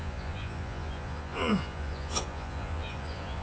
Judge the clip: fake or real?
fake